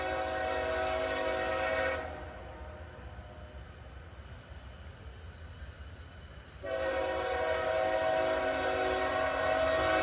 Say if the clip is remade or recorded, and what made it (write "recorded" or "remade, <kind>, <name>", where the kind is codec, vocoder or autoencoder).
recorded